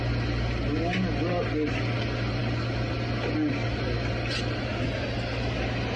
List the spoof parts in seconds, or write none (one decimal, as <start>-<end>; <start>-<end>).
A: none